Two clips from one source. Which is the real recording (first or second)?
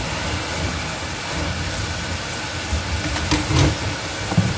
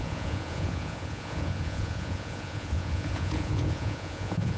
first